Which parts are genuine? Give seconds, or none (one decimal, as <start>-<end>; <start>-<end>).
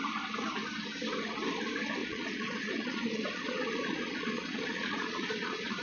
0.0-2.0